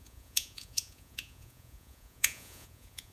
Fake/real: fake